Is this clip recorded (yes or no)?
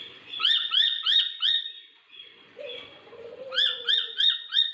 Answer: no